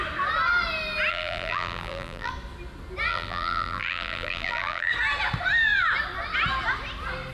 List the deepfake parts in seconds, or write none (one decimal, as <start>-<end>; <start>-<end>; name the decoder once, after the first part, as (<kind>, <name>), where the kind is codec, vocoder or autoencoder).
1.1-2.3 (vocoder, BigVGAN v2); 3.1-4.9